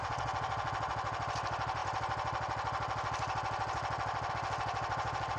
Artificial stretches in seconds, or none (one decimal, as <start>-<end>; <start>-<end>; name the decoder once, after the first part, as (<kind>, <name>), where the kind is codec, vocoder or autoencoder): none